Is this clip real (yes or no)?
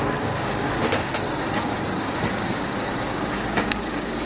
no